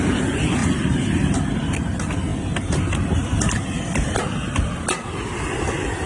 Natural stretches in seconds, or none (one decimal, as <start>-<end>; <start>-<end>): 0.0-6.1